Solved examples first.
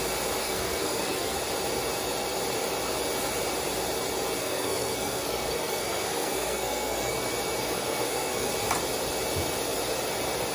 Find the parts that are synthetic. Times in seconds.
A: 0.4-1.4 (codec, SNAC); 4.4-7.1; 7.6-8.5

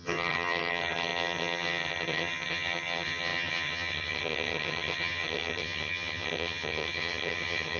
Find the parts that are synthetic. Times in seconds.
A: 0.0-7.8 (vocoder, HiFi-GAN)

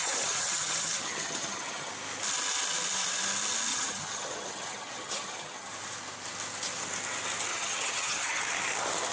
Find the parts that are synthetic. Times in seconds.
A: 0.0-1.9 (vocoder, HiFi-GAN); 3.7-5.7; 7.5-8.4

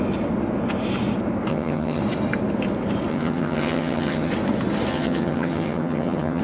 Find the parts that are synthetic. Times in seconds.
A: 1.5-2.0 (vocoder, HiFi-GAN); 3.1-4.3; 4.9-6.4

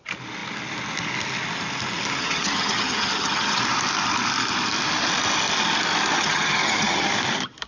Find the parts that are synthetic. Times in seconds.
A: 2.2-3.6 (vocoder, HiFi-GAN); 6.1-7.1